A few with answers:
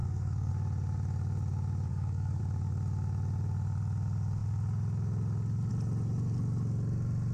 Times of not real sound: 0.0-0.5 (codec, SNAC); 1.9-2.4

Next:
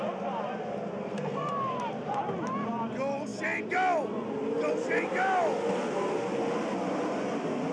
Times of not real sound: 1.0-1.5 (codec, SNAC)

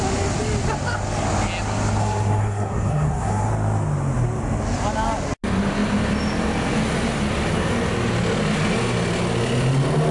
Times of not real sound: 2.0-3.5 (codec, SNAC)

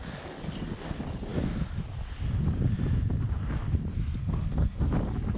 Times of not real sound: 4.2-4.9 (codec, SNAC)